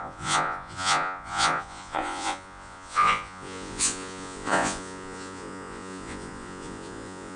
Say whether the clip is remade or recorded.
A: remade